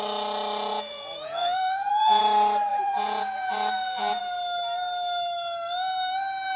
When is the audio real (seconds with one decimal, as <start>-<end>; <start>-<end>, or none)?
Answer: 0.0-0.7; 2.2-2.7; 4.2-6.6